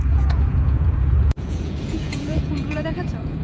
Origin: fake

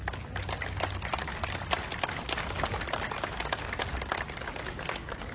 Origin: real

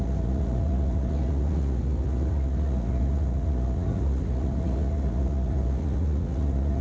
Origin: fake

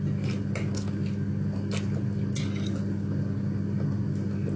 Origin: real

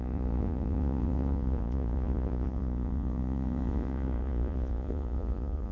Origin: fake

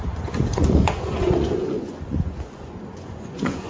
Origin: fake